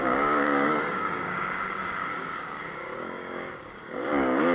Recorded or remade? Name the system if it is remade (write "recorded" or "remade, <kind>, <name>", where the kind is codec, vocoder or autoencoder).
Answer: remade, codec, DAC